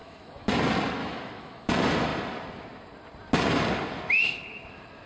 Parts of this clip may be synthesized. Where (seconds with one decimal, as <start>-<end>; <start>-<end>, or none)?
0.0-0.5; 1.0-1.7